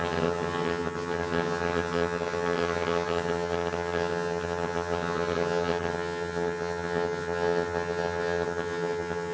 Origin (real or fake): fake